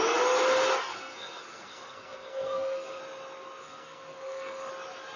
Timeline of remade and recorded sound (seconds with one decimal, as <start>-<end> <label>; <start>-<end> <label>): 0.0-0.9 recorded; 0.9-3.0 remade; 3.0-3.6 recorded; 3.6-4.7 remade; 4.7-5.2 recorded